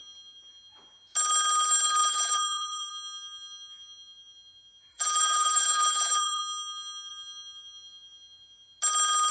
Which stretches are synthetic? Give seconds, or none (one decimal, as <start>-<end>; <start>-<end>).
2.0-2.9; 4.9-6.4